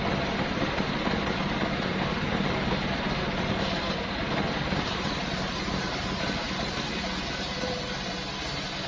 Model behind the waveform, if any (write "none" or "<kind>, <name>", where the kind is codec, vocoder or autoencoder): none